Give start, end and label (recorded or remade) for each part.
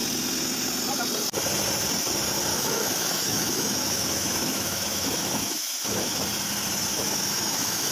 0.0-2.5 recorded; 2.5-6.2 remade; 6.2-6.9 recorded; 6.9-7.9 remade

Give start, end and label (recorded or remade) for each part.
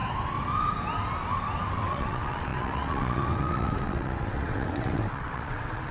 0.0-1.7 recorded; 1.7-5.9 remade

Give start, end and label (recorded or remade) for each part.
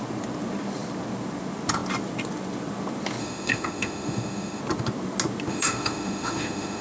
0.0-3.2 recorded; 3.2-4.6 remade; 4.6-5.5 recorded; 5.5-6.8 remade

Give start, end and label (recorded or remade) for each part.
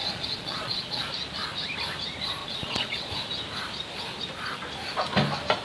0.0-1.0 remade; 1.0-2.4 recorded; 2.4-3.1 remade; 3.1-5.6 recorded